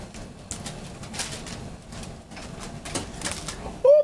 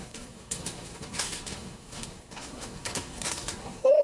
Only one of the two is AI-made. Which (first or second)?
second